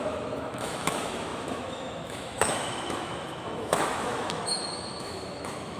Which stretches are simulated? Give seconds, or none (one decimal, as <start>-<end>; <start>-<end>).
0.0-5.8

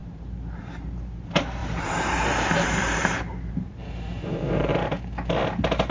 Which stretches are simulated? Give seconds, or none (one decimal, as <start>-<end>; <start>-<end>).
0.0-0.6; 1.6-4.7

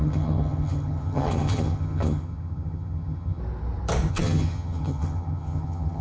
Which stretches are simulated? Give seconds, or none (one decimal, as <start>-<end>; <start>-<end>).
0.0-3.4; 4.1-6.0

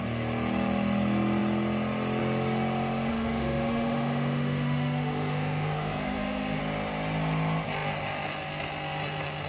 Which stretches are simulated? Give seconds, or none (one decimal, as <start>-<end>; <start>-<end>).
3.1-6.6

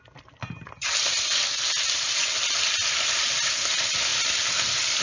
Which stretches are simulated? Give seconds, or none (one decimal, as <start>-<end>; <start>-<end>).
0.4-3.4

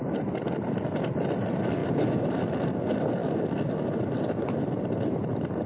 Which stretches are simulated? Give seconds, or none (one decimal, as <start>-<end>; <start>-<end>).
none

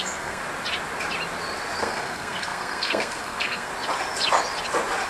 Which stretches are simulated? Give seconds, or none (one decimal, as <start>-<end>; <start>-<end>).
0.0-0.4; 1.8-3.7

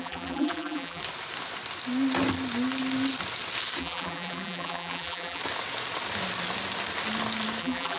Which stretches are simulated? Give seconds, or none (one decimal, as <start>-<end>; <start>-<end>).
0.0-1.0; 3.8-5.4; 7.6-8.0